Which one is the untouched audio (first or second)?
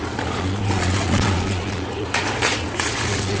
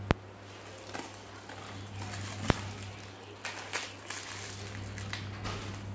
second